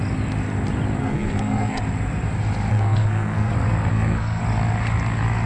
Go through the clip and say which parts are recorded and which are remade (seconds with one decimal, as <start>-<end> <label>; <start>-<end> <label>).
0.0-1.0 recorded; 1.0-1.8 remade; 1.8-2.7 recorded; 2.7-3.5 remade; 3.5-3.9 recorded; 3.9-4.4 remade; 4.4-5.5 recorded